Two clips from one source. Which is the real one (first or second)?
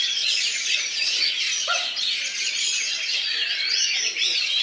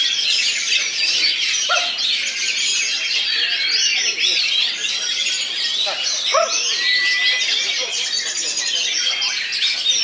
second